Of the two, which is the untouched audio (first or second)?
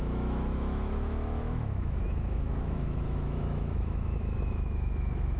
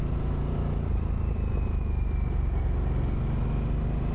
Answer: second